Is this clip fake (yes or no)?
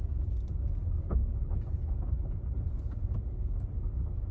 no